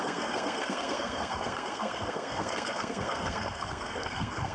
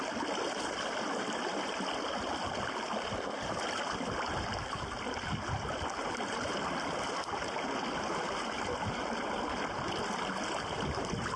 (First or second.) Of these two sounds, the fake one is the first